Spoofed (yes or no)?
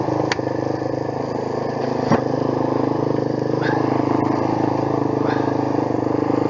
no